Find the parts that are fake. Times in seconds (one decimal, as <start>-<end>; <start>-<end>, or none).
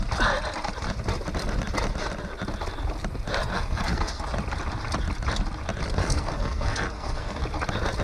3.5-4.2; 6.0-7.4